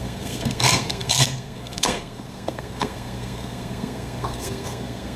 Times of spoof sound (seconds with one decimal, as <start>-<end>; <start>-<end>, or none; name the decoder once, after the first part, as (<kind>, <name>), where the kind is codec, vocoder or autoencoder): 0.0-5.2 (codec, SNAC)